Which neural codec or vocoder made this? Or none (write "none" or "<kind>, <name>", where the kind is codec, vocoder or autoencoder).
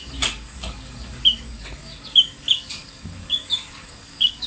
codec, DAC